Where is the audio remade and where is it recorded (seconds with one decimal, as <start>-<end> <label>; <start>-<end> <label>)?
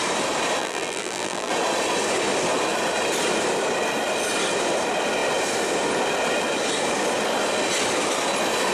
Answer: 0.0-0.6 recorded; 0.6-1.5 remade; 1.5-8.7 recorded